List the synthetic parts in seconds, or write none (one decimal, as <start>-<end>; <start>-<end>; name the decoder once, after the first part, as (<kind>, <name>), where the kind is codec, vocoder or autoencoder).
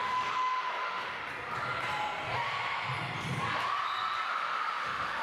0.0-1.2 (autoencoder, DAC-VAE); 4.3-5.2